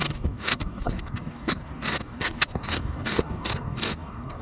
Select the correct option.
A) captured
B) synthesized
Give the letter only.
B